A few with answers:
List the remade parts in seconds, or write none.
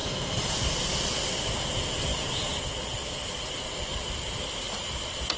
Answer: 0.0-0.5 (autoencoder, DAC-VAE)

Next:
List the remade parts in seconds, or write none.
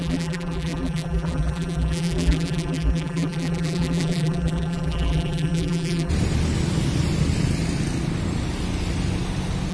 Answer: 0.0-6.1 (vocoder, BigVGAN v2)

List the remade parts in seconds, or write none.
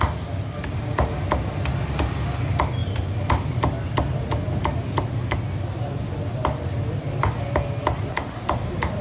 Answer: none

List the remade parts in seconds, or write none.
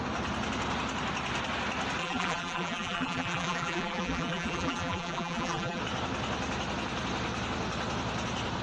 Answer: 2.0-5.8 (vocoder, BigVGAN v2)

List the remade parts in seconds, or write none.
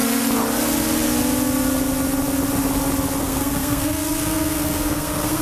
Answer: 3.2-5.4 (codec, SNAC)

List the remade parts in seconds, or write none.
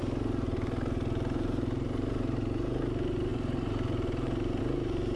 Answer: 0.0-5.2 (vocoder, BigVGAN v2)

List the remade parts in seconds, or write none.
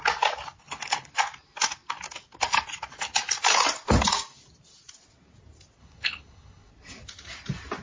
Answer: 0.6-1.1 (codec, HILCodec); 5.8-6.7